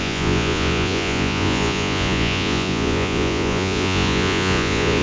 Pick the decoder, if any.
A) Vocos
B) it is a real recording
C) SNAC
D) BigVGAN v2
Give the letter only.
A